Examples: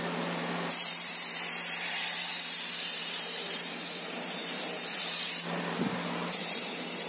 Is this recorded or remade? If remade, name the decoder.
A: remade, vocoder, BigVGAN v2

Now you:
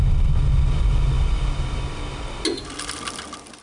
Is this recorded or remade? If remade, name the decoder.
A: recorded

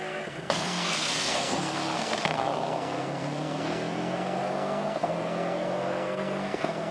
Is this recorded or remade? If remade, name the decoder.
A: remade, codec, SNAC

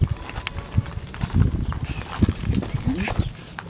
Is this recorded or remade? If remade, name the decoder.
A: recorded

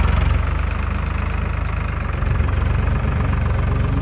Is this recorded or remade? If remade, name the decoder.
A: recorded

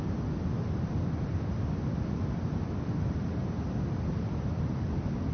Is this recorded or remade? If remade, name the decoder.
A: recorded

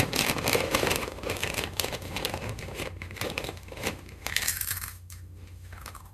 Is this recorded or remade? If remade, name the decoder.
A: remade, autoencoder, DAC-VAE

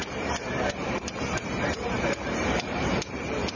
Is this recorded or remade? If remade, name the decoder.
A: remade, vocoder, BigVGAN v2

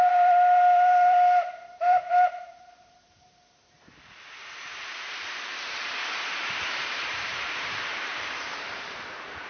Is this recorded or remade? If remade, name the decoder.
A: remade, vocoder, BigVGAN v2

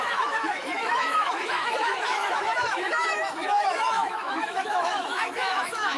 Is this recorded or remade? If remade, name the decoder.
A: remade, autoencoder, DAC-VAE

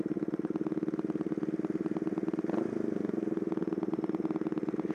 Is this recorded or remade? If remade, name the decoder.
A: recorded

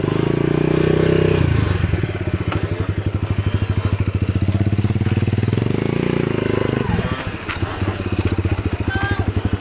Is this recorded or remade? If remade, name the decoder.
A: recorded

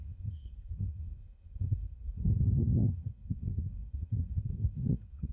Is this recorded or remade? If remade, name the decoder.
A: remade, codec, SNAC